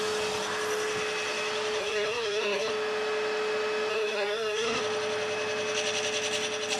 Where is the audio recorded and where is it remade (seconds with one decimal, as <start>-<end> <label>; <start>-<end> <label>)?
0.0-1.8 recorded; 1.8-2.7 remade; 2.7-3.9 recorded; 3.9-4.8 remade; 4.8-6.8 recorded